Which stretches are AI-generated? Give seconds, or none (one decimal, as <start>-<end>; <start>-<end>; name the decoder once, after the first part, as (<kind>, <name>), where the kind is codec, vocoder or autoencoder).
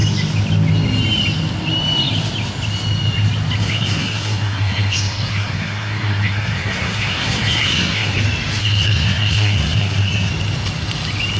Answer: 3.6-8.2 (codec, SNAC); 8.6-10.3